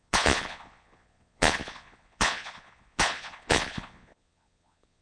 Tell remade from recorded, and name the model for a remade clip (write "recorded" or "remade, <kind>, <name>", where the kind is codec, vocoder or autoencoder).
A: remade, vocoder, Vocos